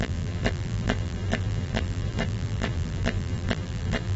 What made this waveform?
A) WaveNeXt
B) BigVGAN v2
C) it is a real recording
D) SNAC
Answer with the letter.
B